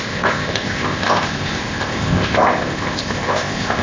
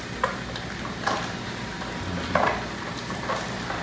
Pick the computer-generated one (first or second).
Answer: first